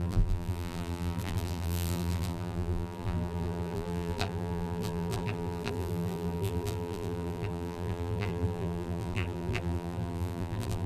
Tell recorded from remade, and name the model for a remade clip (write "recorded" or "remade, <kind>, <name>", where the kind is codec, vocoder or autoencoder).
remade, vocoder, BigVGAN v2